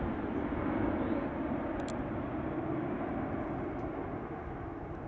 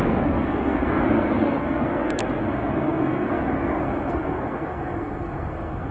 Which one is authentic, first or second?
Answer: first